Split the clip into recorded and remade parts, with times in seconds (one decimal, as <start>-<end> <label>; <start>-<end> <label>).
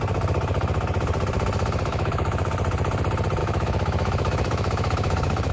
0.0-1.9 recorded; 1.9-2.5 remade; 2.5-3.4 recorded; 3.4-5.5 remade